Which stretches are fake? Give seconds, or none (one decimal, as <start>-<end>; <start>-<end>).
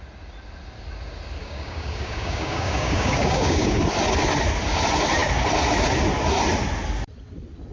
1.4-3.8